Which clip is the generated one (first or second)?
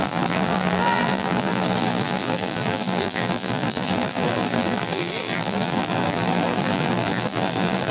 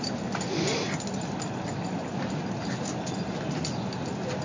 first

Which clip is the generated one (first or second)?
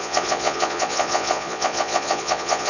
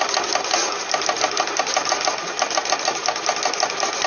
first